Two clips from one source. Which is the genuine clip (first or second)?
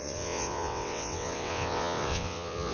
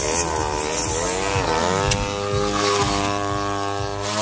second